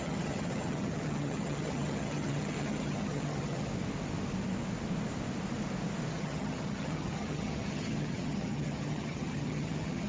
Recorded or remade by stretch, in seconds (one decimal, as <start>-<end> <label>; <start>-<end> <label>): 0.0-3.7 remade; 3.7-6.1 recorded; 6.1-10.1 remade